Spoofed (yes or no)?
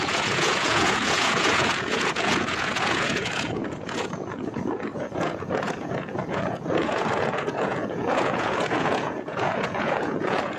yes